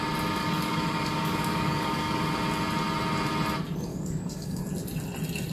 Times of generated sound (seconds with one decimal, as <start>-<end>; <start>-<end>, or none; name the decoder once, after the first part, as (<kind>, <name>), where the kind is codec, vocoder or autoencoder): 0.4-2.3 (codec, DAC); 3.9-4.6